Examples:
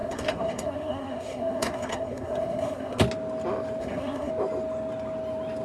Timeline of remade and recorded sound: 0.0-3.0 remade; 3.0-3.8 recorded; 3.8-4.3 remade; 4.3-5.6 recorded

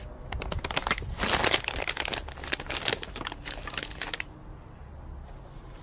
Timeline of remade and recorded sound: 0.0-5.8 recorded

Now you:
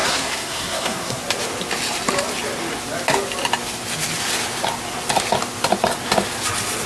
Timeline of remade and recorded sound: 0.0-1.2 remade; 1.2-6.9 recorded

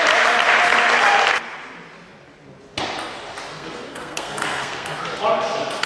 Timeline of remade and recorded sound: 0.0-3.5 recorded; 3.5-5.0 remade; 5.0-5.9 recorded

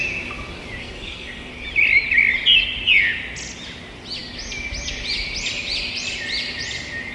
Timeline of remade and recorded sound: 0.0-0.8 recorded; 0.8-1.5 remade; 1.5-7.1 recorded

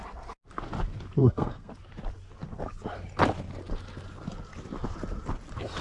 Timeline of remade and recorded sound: 0.0-1.2 recorded; 1.2-1.7 remade; 1.7-5.8 recorded